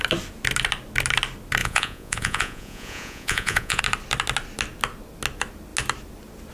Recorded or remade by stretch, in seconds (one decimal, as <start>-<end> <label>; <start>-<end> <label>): 0.0-1.6 recorded; 1.6-3.8 remade; 3.8-6.5 recorded